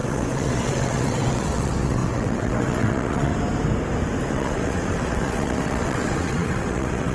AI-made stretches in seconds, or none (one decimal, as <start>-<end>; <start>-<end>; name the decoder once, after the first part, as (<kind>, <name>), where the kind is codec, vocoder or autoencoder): 0.0-3.3 (vocoder, WaveNeXt); 4.3-7.1